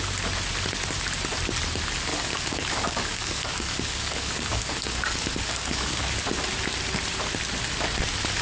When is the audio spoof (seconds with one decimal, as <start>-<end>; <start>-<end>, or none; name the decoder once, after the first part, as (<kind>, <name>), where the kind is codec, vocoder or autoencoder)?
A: 2.1-6.0 (codec, DAC)